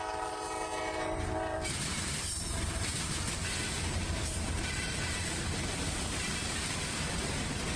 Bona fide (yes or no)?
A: no